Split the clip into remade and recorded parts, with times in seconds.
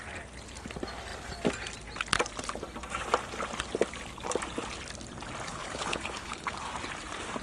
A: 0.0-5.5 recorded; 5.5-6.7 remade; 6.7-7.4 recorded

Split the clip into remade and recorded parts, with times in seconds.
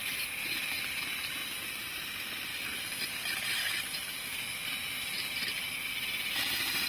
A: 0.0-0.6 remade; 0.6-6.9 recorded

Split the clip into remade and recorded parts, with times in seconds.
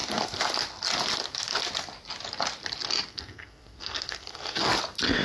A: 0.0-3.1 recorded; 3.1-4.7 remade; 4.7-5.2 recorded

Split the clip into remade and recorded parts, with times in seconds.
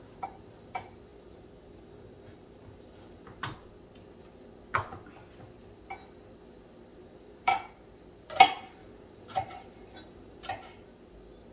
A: 0.0-1.1 recorded; 1.1-3.7 remade; 3.7-6.9 recorded; 6.9-7.7 remade; 7.7-8.8 recorded; 8.8-10.5 remade; 10.5-11.5 recorded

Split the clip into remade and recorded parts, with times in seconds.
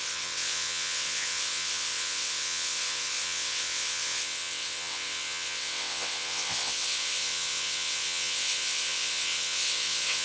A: 0.0-10.2 remade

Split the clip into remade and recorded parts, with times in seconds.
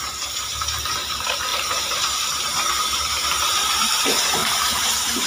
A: 0.0-5.3 remade